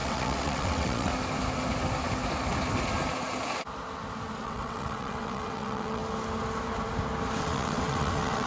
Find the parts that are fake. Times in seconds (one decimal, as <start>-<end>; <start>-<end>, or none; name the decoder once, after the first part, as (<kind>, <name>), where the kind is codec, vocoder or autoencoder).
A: 0.0-1.1 (vocoder, WaveNeXt); 4.4-6.0; 7.4-8.5

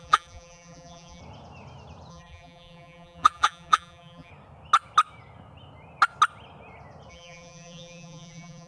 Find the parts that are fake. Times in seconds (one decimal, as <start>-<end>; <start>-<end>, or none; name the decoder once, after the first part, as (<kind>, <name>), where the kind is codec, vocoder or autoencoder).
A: 0.0-1.2 (vocoder, BigVGAN v2); 2.1-4.3; 7.1-8.7

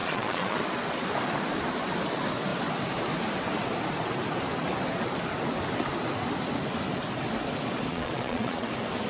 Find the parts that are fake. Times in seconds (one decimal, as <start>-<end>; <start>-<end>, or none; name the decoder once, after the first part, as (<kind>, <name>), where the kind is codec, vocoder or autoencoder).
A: 0.0-0.6 (vocoder, Vocos); 7.9-8.7

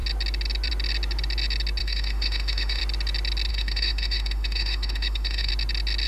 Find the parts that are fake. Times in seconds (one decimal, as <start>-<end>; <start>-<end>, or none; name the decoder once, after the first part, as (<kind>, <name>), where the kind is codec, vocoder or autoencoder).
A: 1.8-2.8 (autoencoder, DAC-VAE); 3.5-5.5

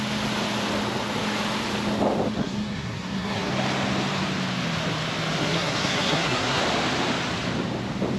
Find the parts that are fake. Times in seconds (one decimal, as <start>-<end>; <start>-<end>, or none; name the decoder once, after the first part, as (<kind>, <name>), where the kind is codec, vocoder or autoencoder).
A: 2.4-3.5 (codec, SNAC); 5.4-6.6

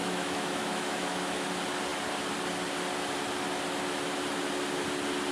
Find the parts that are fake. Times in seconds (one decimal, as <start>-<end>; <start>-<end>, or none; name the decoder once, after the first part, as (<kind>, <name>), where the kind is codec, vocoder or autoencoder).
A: 0.0-1.5 (autoencoder, DAC-VAE)

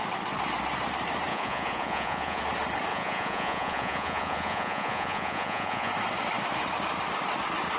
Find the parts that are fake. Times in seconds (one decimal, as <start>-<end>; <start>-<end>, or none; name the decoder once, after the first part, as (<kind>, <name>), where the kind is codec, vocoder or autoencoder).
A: 1.3-2.4 (vocoder, Vocos); 2.9-5.9

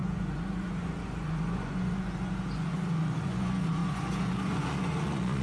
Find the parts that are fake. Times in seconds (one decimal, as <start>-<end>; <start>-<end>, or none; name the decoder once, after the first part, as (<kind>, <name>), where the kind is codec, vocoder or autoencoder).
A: 0.0-5.4 (vocoder, Vocos)